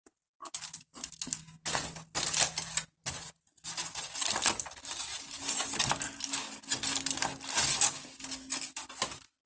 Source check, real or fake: real